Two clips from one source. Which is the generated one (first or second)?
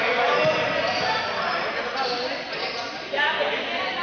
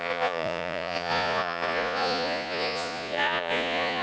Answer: second